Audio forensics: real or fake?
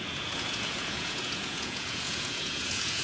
fake